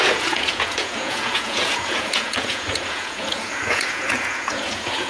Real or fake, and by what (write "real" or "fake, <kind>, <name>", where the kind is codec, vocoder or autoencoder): fake, vocoder, Vocos